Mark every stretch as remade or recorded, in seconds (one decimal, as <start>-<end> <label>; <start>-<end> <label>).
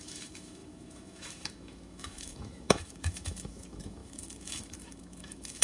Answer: 0.0-5.6 remade